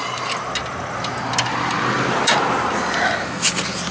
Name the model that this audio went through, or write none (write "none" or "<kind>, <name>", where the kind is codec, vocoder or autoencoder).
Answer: none